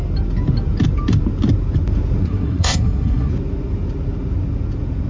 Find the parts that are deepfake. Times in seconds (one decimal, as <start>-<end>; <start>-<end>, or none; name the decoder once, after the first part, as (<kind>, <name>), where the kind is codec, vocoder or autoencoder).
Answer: 2.2-3.3 (codec, SNAC)